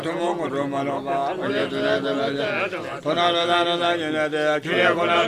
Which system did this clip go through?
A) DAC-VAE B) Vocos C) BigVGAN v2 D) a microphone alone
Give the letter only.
D